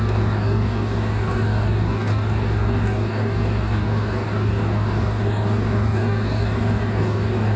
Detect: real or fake fake